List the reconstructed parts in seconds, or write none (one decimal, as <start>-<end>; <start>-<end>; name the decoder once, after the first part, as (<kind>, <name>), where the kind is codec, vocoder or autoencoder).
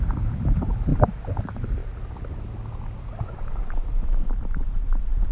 0.0-0.9 (vocoder, BigVGAN v2); 1.4-1.8; 3.0-5.3